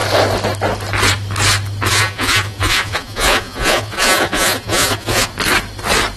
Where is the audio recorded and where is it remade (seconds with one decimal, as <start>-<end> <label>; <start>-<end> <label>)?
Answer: 0.0-1.9 recorded; 1.9-5.3 remade; 5.3-6.2 recorded